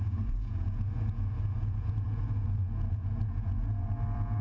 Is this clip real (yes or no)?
no